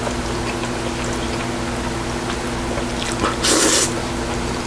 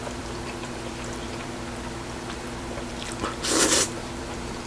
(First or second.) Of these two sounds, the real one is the first